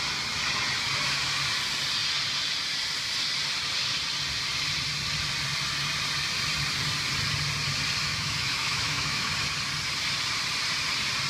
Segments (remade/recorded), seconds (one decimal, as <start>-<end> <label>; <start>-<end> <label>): 0.0-8.1 recorded; 8.1-9.3 remade; 9.3-11.3 recorded